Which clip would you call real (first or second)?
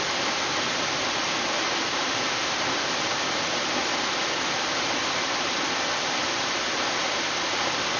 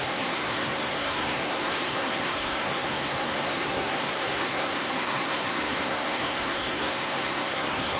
first